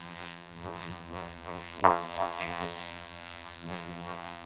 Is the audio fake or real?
fake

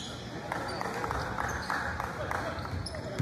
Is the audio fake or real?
real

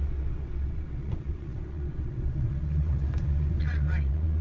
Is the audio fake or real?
fake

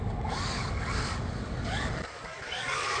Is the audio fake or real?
fake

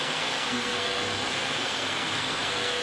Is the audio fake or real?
fake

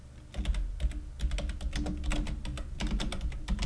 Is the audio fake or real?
real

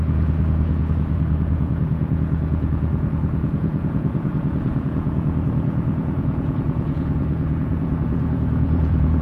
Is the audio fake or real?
fake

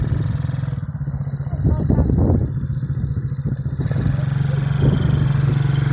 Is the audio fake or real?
real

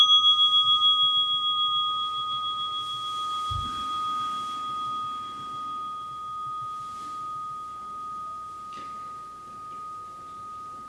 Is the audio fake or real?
real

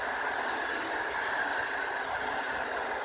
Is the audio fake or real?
real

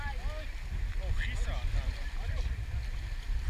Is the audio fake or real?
real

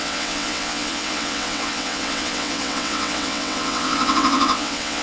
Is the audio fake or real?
fake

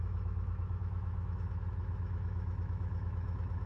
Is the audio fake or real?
fake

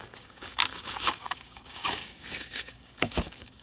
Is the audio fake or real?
fake